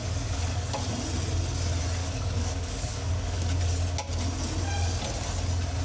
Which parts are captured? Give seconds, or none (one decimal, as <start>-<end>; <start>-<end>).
0.8-2.0; 3.6-5.8